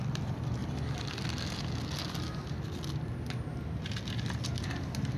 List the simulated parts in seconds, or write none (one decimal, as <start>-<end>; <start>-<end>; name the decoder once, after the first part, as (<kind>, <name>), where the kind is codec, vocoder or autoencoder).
none

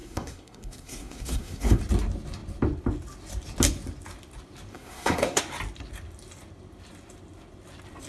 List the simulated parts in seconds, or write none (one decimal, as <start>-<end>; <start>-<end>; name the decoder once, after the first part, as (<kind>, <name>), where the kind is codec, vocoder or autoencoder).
0.0-1.8 (codec, SNAC); 4.7-5.4

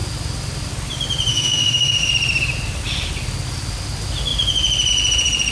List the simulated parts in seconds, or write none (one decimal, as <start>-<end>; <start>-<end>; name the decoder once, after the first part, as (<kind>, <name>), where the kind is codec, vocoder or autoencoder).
1.3-2.1 (autoencoder, DAC-VAE)

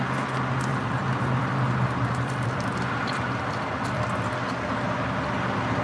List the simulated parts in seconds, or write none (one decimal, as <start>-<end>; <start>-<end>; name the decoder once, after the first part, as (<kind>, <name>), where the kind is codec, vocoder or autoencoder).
0.7-4.1 (vocoder, BigVGAN v2)

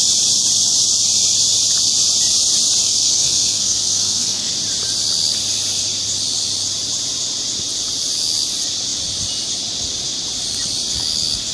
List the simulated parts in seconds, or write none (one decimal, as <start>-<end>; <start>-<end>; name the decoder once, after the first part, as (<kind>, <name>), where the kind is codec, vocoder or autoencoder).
2.8-4.5 (codec, SNAC)

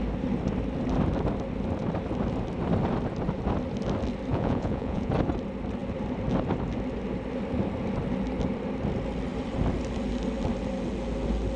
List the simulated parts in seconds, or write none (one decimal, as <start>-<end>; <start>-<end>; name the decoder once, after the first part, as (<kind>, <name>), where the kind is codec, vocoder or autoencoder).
4.3-5.1 (vocoder, Vocos)

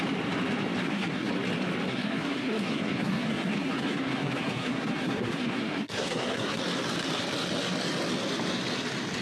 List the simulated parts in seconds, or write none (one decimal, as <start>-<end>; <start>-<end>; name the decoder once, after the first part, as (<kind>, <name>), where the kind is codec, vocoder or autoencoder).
0.8-1.3 (codec, SNAC); 1.9-6.6